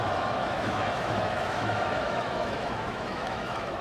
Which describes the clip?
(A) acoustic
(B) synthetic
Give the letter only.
B